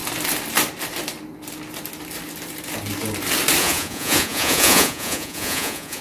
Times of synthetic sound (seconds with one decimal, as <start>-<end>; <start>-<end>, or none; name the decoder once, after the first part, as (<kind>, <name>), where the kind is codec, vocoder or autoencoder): 3.6-6.0 (vocoder, Vocos)